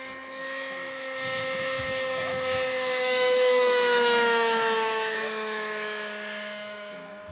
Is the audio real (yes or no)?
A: no